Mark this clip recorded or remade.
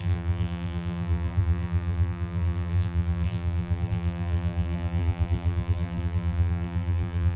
remade